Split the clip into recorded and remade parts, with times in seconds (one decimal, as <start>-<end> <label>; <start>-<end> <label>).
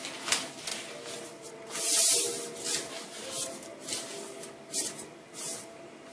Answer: 0.0-6.1 recorded